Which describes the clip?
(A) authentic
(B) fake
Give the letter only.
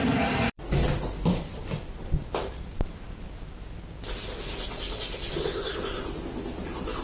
A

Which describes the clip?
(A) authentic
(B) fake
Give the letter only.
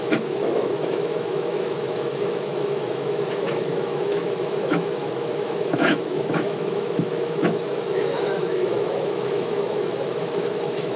B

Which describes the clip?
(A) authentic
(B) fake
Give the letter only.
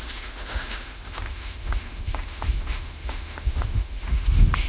B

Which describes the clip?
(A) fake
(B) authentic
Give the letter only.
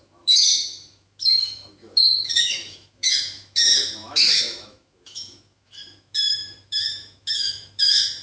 A